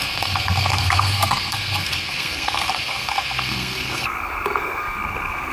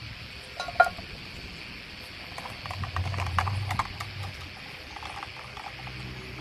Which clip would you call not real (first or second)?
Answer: first